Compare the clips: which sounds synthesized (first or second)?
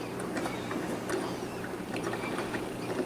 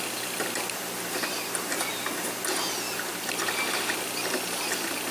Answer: first